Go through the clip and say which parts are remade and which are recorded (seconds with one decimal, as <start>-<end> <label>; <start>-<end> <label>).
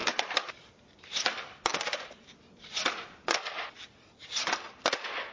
0.0-1.7 remade; 1.7-5.3 recorded